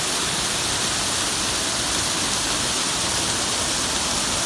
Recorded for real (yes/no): yes